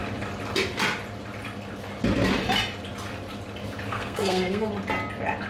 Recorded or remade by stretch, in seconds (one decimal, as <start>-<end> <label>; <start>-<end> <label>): 0.0-3.9 recorded; 3.9-4.7 remade; 4.7-5.5 recorded